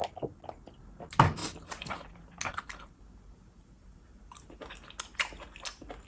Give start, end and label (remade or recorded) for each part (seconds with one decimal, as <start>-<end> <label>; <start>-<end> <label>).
0.0-6.1 recorded